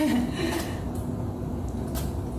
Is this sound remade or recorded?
recorded